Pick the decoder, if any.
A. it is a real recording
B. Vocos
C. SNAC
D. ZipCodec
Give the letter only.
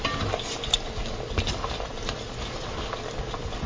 A